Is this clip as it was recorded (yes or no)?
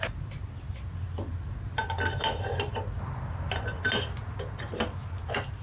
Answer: yes